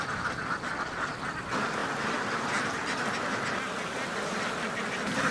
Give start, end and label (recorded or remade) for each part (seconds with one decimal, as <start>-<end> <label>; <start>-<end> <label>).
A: 0.0-5.3 recorded